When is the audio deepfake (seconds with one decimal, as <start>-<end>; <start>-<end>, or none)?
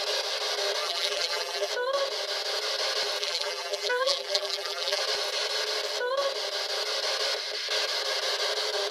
0.8-1.7; 3.2-5.0